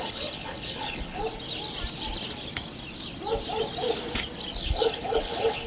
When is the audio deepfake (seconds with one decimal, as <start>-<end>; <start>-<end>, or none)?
0.0-1.2; 4.6-5.7